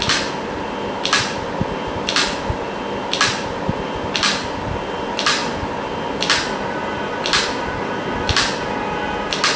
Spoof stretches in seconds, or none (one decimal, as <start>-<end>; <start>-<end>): none

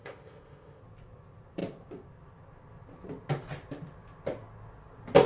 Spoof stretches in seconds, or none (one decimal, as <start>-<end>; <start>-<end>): 0.0-0.8

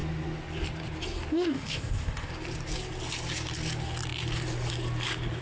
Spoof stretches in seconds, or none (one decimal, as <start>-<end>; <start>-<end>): 1.3-2.3